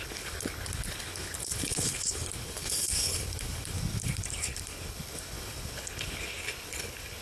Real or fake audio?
fake